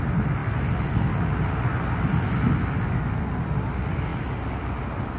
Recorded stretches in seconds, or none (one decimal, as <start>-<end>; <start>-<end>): 0.0-5.2